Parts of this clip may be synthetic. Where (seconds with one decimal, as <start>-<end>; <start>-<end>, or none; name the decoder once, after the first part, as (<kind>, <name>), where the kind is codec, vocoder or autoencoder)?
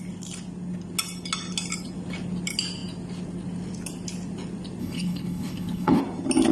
4.8-6.0 (codec, HILCodec)